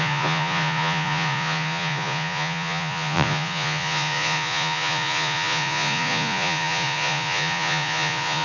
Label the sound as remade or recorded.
remade